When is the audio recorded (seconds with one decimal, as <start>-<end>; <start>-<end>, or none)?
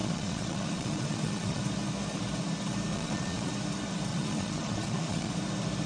1.6-2.9; 3.5-4.1; 5.3-5.9